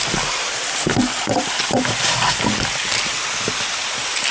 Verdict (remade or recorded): recorded